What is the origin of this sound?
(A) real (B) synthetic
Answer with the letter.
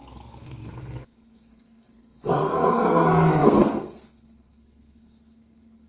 B